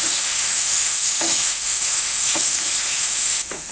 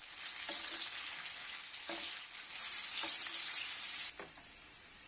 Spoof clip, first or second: first